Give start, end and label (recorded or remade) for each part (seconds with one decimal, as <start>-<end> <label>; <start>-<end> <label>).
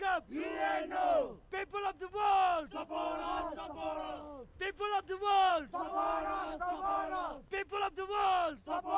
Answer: 0.0-4.5 recorded; 4.5-5.5 remade; 5.5-6.4 recorded; 6.4-7.8 remade; 7.8-9.0 recorded